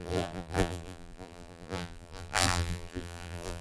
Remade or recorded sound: remade